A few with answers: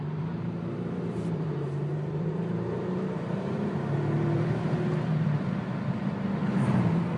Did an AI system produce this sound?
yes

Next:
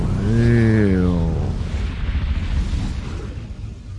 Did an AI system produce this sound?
no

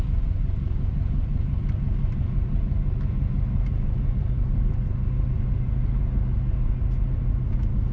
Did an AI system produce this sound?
no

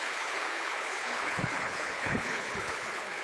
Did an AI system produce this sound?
yes